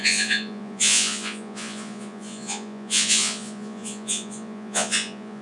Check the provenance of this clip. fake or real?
fake